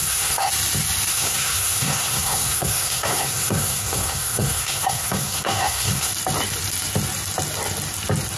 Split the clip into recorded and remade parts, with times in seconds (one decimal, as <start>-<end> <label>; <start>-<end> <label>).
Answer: 0.0-0.5 remade; 0.5-1.1 recorded; 1.1-6.1 remade; 6.1-8.4 recorded